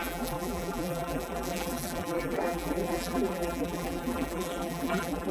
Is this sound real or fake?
fake